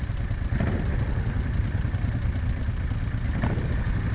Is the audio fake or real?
real